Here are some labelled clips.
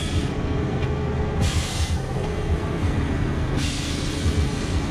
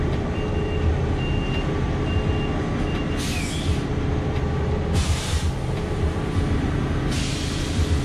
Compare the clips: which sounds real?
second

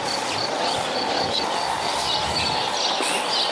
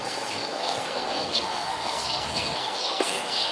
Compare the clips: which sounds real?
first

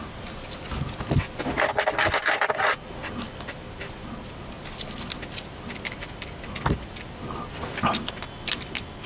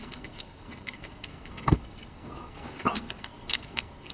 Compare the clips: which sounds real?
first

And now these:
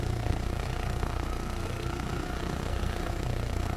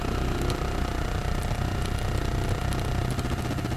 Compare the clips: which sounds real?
second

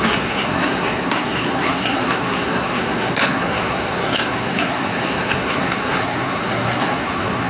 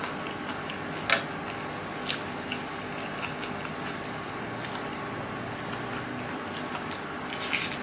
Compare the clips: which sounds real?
second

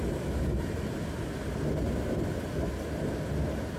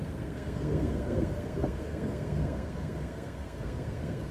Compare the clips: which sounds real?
first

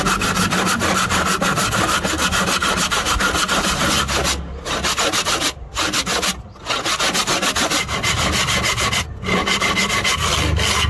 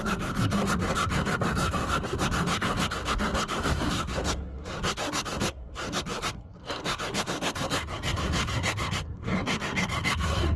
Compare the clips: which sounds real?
first